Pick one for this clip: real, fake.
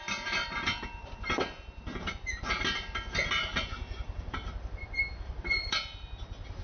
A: fake